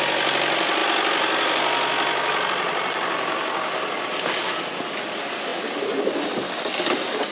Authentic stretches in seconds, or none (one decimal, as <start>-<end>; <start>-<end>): 0.0-7.3